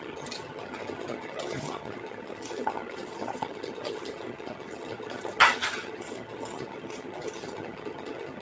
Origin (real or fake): fake